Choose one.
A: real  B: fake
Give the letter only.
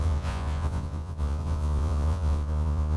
B